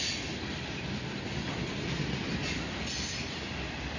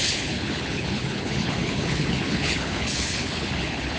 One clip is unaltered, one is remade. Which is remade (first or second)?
second